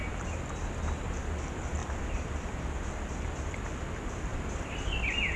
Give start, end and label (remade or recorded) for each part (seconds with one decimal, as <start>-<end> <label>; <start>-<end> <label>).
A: 0.0-1.8 recorded; 1.8-2.7 remade; 2.7-4.3 recorded; 4.3-4.9 remade; 4.9-5.4 recorded